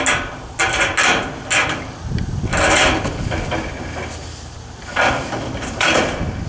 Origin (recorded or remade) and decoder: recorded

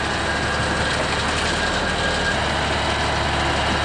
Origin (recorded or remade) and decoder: recorded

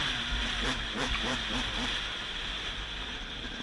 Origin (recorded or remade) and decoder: remade, vocoder, BigVGAN v2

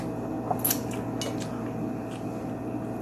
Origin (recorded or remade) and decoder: recorded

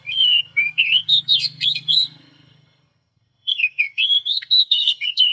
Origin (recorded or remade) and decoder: remade, codec, SNAC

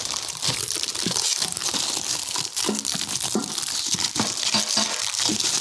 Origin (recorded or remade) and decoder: remade, vocoder, BigVGAN v2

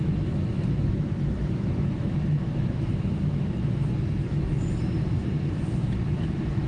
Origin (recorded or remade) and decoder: remade, autoencoder, DAC-VAE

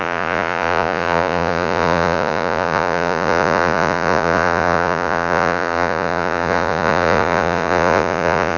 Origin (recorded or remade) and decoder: remade, vocoder, Vocos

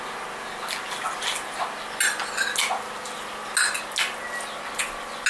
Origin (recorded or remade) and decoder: recorded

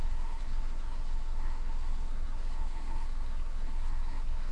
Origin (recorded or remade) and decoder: remade, codec, SNAC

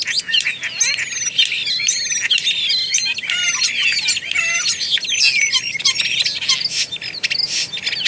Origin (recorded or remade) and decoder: recorded